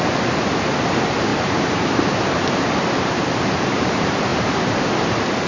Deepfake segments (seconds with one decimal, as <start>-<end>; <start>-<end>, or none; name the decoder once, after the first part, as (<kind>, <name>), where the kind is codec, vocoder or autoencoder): 1.3-3.9 (vocoder, BigVGAN v2); 4.3-4.9